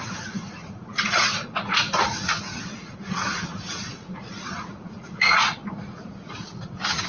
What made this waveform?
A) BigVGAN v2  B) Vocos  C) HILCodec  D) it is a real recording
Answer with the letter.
B